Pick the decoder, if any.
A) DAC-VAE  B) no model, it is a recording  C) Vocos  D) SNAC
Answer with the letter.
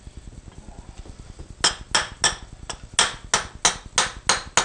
B